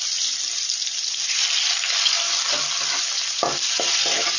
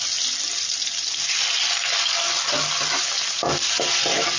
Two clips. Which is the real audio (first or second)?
second